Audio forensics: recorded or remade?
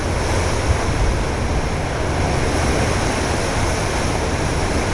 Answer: recorded